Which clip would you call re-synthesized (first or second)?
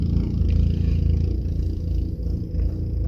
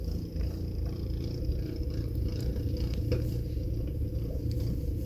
second